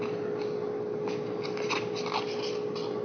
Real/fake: real